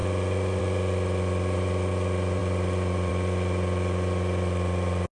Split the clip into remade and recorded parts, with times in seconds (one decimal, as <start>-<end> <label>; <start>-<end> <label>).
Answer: 0.0-5.1 recorded